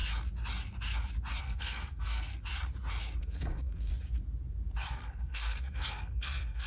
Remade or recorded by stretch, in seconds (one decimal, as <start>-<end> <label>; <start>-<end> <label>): 0.0-1.4 recorded; 1.4-2.3 remade; 2.3-3.2 recorded; 3.2-3.9 remade; 3.9-4.9 recorded; 4.9-6.7 remade